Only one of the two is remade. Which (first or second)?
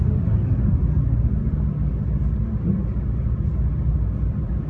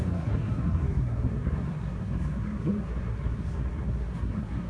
second